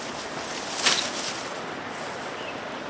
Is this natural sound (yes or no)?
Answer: yes